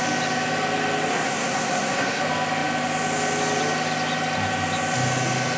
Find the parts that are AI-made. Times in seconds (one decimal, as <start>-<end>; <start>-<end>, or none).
1.1-2.2